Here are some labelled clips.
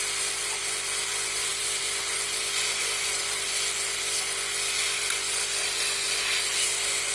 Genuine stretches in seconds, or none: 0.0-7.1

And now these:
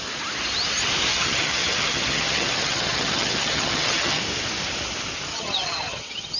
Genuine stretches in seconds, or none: 0.0-1.1; 4.2-5.3